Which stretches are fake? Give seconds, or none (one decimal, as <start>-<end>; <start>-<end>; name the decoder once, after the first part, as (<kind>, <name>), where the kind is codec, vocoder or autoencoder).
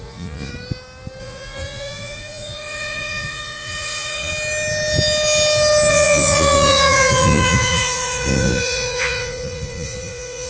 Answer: 0.0-0.5 (vocoder, Vocos); 1.2-4.3; 5.9-10.5